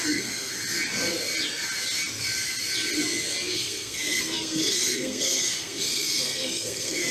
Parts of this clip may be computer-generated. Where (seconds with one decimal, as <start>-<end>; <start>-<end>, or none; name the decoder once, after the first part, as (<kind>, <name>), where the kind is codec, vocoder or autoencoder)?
0.0-0.5 (codec, SNAC); 3.5-7.1